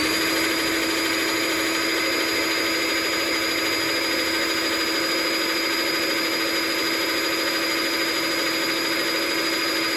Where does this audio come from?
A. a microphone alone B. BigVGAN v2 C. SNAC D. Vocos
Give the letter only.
A